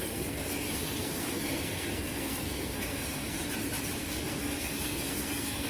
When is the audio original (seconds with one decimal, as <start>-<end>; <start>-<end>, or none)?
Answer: 3.4-4.0